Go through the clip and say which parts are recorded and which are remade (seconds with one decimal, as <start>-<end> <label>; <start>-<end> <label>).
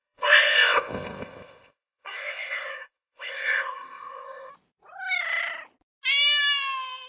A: 0.0-4.5 remade; 4.5-7.1 recorded